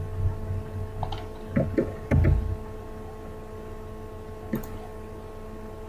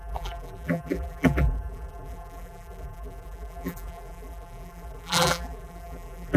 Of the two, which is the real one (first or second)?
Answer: first